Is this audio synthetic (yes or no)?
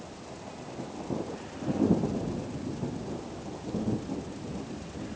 no